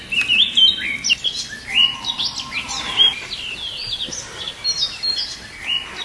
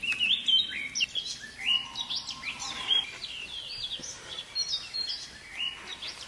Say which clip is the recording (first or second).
first